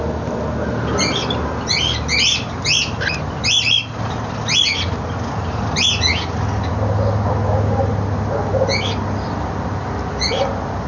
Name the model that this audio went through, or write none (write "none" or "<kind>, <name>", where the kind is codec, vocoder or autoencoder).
none